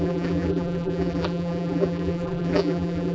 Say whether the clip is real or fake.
fake